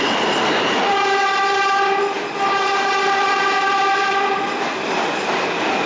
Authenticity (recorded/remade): recorded